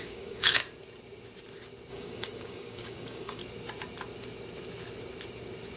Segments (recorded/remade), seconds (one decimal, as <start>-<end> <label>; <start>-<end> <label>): 0.0-0.6 remade; 0.6-1.9 recorded; 1.9-3.4 remade; 3.4-5.8 recorded